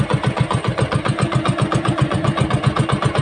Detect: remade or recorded remade